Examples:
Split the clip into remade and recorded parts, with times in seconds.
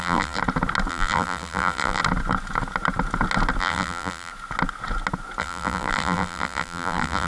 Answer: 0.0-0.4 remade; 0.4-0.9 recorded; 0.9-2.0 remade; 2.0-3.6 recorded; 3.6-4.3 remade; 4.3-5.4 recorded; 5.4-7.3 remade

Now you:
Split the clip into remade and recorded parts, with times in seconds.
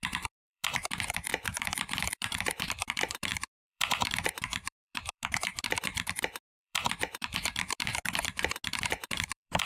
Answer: 0.0-7.9 remade; 7.9-8.8 recorded; 8.8-9.7 remade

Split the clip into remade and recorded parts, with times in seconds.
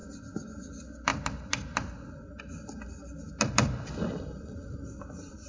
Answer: 0.0-0.6 recorded; 0.6-5.5 remade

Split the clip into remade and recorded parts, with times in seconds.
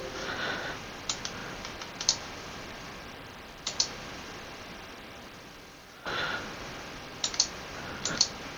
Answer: 0.0-8.6 remade